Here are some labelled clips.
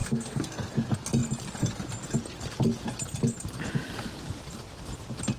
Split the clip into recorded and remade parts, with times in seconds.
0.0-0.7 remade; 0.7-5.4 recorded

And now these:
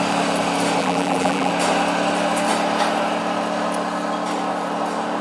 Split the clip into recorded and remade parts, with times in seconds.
0.0-0.8 recorded; 0.8-1.5 remade; 1.5-5.2 recorded

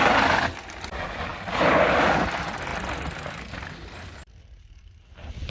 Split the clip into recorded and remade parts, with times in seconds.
0.0-2.7 remade; 2.7-4.4 recorded; 4.4-5.5 remade